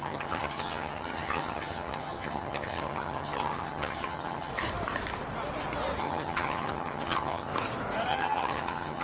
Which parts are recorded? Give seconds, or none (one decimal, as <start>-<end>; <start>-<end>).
4.5-6.0; 7.5-8.1